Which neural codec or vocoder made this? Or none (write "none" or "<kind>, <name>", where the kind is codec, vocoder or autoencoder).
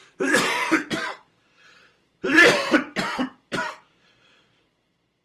vocoder, BigVGAN v2